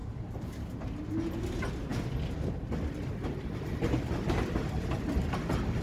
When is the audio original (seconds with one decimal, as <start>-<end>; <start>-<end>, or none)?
0.0-1.9; 4.9-5.8